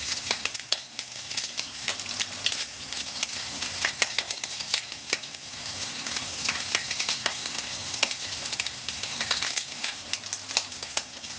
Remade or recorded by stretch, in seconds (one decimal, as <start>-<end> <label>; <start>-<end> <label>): 0.0-1.9 remade; 1.9-2.5 recorded; 2.5-10.1 remade; 10.1-10.7 recorded; 10.7-11.4 remade